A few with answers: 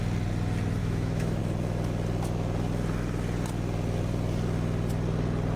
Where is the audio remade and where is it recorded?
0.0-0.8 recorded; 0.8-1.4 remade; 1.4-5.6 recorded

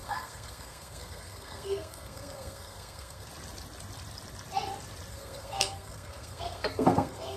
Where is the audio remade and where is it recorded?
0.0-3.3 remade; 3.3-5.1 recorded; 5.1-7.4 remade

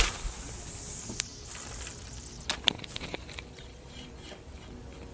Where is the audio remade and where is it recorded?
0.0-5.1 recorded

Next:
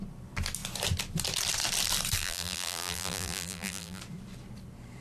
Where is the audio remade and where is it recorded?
0.0-2.2 recorded; 2.2-4.0 remade; 4.0-5.0 recorded

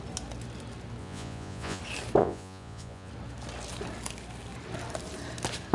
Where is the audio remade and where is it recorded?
0.0-1.0 recorded; 1.0-1.8 remade; 1.8-2.2 recorded; 2.2-3.1 remade; 3.1-5.7 recorded